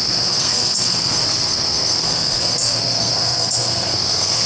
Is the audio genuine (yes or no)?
no